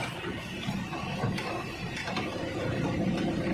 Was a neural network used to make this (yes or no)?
yes